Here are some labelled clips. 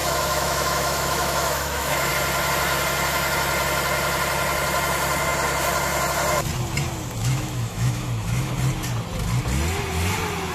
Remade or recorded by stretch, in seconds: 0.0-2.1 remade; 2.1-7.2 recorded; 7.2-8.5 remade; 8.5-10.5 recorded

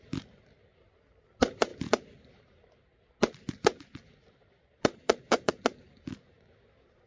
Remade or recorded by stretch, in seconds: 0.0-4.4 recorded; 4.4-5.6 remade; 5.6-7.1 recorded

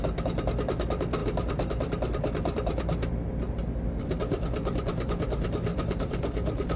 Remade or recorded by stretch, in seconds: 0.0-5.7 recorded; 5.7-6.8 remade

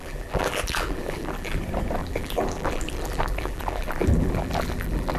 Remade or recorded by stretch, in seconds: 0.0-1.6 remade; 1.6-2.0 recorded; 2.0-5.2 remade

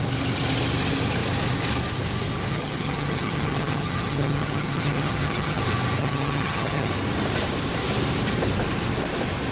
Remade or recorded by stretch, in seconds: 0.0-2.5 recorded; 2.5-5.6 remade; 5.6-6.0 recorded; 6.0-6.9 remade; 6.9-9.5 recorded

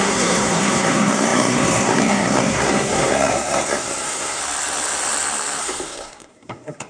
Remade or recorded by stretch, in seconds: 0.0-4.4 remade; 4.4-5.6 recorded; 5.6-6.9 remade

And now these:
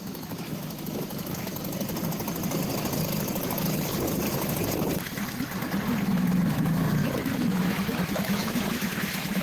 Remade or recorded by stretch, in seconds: 0.0-1.5 remade; 1.5-6.0 recorded; 6.0-9.4 remade

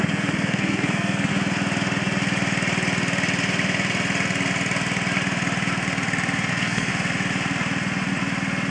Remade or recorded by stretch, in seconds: 0.0-1.3 remade; 1.3-6.5 recorded; 6.5-6.9 remade; 6.9-8.7 recorded